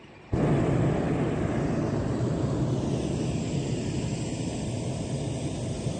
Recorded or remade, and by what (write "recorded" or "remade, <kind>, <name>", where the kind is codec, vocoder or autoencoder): recorded